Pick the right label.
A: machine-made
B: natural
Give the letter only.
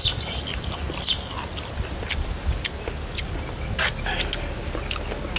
B